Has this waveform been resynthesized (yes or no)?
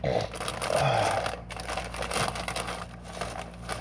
no